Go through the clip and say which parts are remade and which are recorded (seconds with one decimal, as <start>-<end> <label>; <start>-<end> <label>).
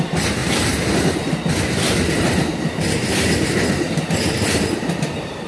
0.0-5.5 recorded